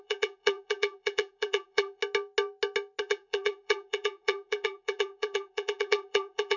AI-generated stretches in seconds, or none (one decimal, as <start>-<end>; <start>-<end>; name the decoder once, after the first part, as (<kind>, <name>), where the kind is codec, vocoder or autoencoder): 0.0-2.0 (vocoder, BigVGAN v2); 3.0-6.6